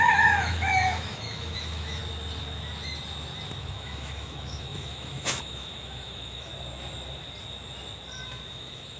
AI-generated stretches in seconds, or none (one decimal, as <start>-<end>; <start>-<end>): 0.0-2.0; 3.6-6.5; 8.5-9.0